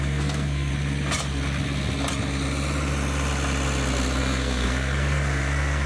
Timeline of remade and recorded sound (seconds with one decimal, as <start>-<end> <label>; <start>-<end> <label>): 0.0-0.7 remade; 0.7-4.2 recorded; 4.2-5.9 remade